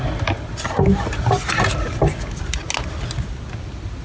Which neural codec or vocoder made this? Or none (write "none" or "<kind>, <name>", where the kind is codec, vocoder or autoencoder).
none